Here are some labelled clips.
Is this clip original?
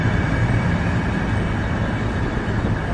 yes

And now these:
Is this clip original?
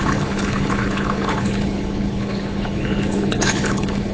no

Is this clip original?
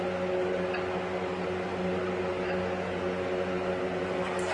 yes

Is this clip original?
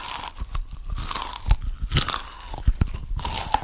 yes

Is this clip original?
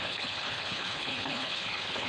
no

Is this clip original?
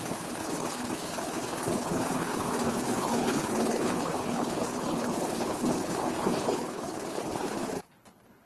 no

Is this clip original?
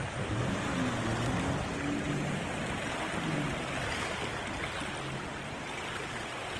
yes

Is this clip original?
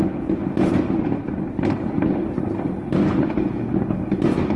yes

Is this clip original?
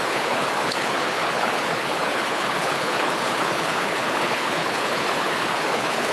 no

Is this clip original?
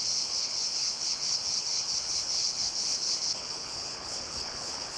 no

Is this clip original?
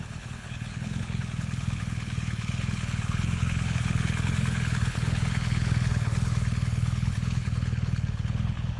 no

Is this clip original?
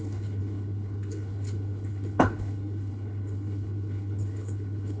no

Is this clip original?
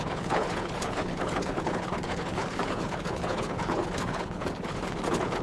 no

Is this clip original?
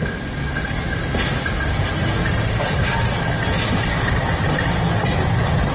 yes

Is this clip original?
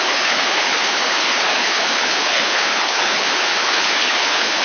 no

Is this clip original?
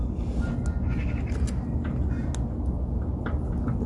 yes